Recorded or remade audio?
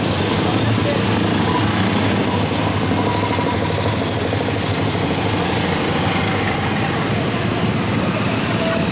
recorded